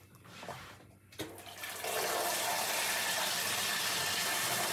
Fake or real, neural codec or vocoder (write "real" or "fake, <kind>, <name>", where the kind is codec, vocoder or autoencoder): real